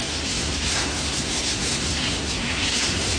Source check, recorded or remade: remade